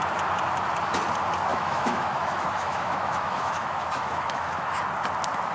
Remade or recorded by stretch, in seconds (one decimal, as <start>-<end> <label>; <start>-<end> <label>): 0.0-1.5 recorded; 1.5-4.8 remade; 4.8-5.5 recorded